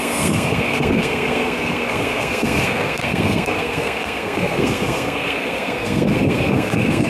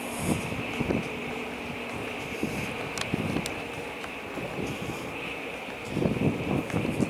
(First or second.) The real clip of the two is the second